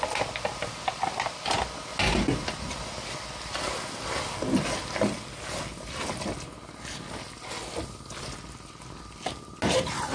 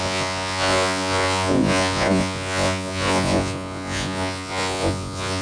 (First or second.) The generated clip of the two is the second